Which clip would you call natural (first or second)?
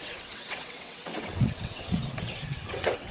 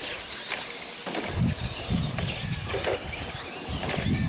second